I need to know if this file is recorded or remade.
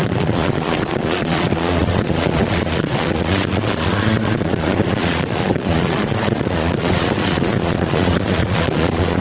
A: remade